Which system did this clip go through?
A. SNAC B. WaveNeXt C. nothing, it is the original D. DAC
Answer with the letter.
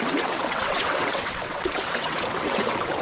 B